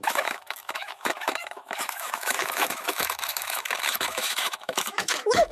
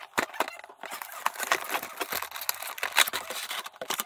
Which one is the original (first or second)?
second